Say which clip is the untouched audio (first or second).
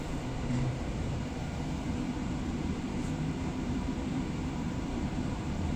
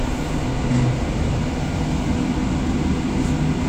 second